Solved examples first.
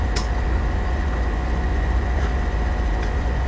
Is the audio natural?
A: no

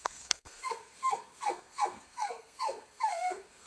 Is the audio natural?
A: no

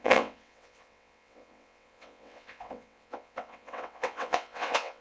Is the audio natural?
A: no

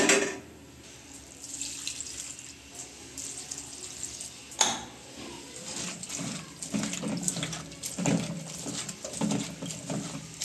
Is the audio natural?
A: yes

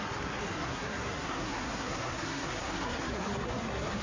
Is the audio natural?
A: no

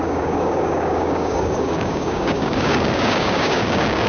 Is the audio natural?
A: no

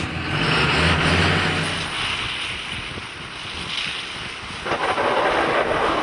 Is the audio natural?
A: yes